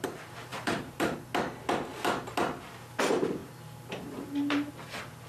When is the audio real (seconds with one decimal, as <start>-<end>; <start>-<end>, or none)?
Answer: 0.0-0.5; 1.3-3.4; 4.7-5.3